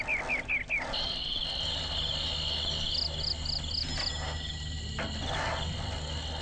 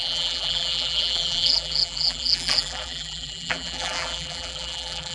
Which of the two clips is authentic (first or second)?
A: first